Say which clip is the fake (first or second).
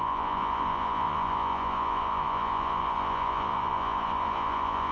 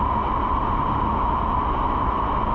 first